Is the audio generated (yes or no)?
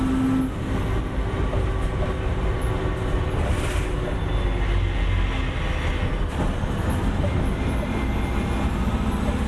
no